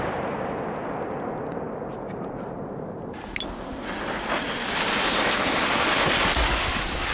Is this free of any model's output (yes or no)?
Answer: yes